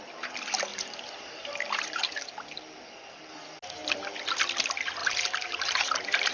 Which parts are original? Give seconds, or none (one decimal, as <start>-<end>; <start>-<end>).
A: 0.0-0.7; 2.0-5.0